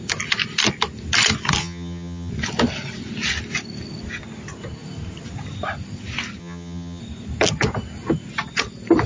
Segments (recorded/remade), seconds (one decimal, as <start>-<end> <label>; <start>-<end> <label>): 0.0-1.6 recorded; 1.6-2.3 remade; 2.3-6.4 recorded; 6.4-7.0 remade; 7.0-9.1 recorded